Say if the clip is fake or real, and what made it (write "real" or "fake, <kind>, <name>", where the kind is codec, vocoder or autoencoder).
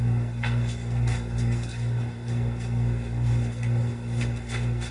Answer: fake, codec, SNAC